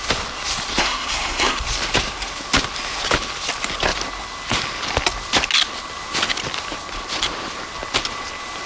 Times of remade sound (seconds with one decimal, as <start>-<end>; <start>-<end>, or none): 0.8-1.6